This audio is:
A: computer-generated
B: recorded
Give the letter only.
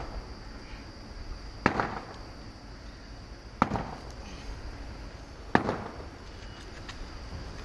B